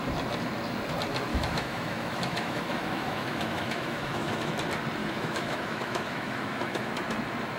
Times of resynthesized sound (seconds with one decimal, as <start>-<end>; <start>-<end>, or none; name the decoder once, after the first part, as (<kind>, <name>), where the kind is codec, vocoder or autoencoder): 1.3-4.5 (autoencoder, DAC-VAE); 5.0-6.9